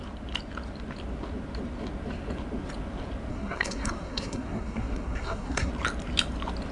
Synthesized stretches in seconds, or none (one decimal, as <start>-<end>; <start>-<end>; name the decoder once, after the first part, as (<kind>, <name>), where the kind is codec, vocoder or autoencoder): 3.3-5.7 (codec, SNAC)